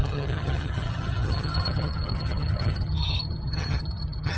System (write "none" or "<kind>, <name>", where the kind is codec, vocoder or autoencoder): vocoder, HiFi-GAN